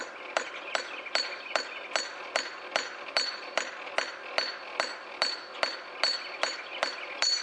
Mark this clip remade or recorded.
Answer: recorded